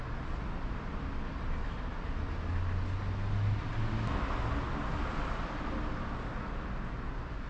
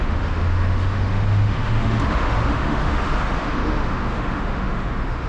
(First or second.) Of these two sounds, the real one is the first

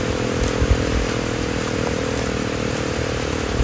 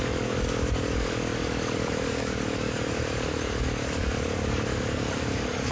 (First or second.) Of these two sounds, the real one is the first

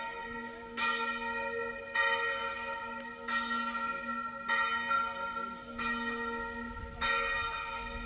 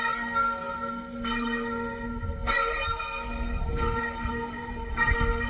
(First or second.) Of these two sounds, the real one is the first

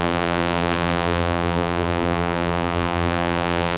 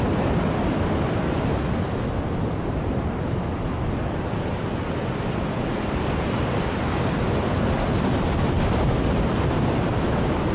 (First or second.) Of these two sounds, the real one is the second